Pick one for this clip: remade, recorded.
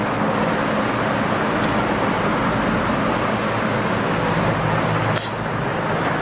recorded